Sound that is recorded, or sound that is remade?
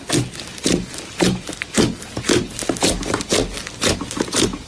recorded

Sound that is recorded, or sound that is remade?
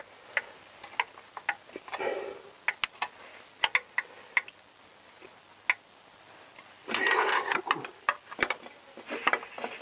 recorded